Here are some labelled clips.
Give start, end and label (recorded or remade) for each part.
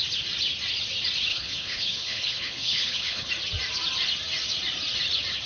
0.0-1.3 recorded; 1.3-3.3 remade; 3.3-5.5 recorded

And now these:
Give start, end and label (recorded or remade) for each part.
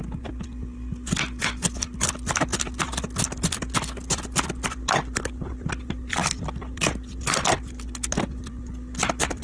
0.0-9.4 recorded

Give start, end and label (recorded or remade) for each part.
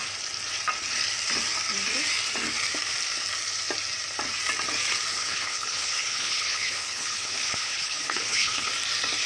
0.0-5.1 recorded; 5.1-8.7 remade; 8.7-9.3 recorded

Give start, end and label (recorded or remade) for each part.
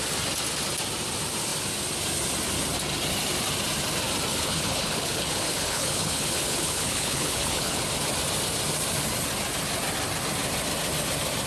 0.0-4.3 recorded; 4.3-7.8 remade; 7.8-11.5 recorded